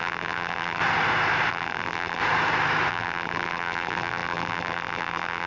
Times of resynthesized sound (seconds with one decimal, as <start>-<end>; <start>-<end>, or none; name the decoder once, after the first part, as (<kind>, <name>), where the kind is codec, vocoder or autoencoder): 0.0-0.8 (vocoder, BigVGAN v2); 1.5-2.2; 2.9-5.5